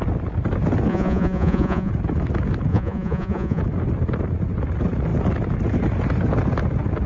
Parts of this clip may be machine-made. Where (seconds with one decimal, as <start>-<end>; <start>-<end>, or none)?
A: 0.9-1.9; 2.7-3.6